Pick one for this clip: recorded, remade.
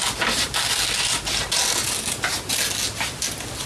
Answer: recorded